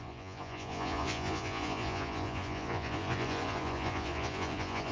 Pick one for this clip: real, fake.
fake